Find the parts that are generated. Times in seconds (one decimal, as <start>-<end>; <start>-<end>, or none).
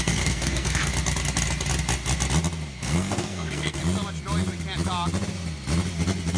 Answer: 0.0-0.9; 2.7-3.8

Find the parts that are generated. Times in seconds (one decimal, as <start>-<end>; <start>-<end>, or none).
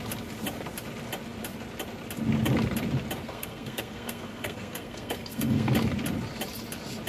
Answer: 3.2-5.7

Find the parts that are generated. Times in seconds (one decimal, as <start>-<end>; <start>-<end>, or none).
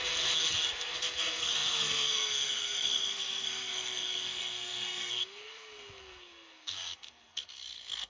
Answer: 0.0-8.1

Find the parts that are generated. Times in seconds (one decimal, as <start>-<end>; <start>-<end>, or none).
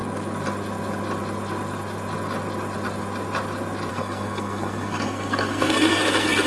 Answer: 3.9-6.5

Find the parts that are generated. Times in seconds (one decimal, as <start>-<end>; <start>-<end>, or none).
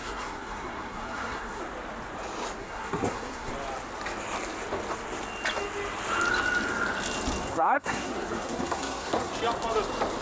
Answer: 0.0-1.6; 2.6-3.5; 7.4-9.3